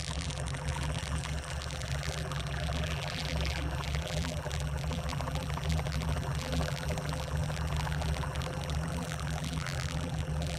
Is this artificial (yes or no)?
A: yes